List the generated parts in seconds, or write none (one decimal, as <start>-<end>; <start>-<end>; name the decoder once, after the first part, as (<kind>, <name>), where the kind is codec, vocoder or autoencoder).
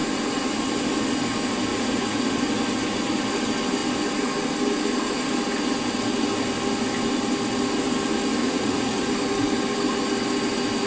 1.7-2.4 (vocoder, Vocos); 8.4-9.1